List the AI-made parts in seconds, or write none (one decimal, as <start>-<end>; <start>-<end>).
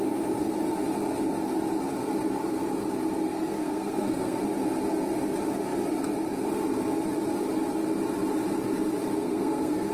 3.3-4.4; 9.2-9.9